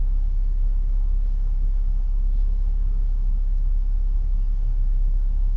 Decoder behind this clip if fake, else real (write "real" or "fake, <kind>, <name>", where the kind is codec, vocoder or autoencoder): fake, codec, DAC